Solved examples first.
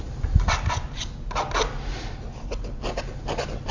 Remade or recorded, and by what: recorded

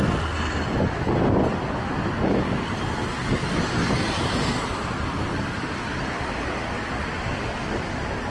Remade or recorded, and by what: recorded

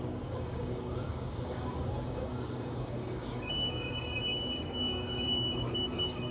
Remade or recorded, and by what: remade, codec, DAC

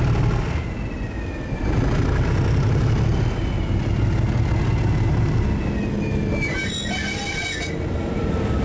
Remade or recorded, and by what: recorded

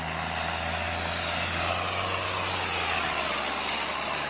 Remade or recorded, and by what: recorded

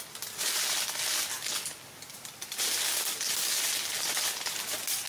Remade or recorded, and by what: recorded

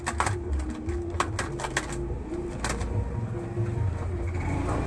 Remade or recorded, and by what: recorded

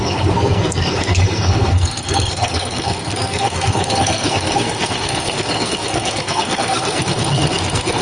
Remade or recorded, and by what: remade, codec, SNAC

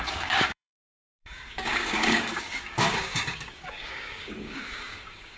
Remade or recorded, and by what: remade, codec, DAC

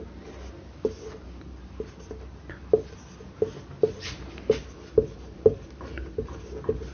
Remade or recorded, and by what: recorded